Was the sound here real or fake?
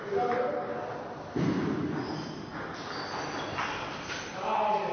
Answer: real